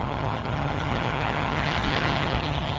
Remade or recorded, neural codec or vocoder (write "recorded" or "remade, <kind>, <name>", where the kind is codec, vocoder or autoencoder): remade, vocoder, HiFi-GAN